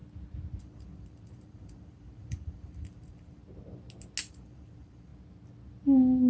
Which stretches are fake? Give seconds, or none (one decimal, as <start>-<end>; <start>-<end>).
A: 0.6-3.4; 4.3-5.1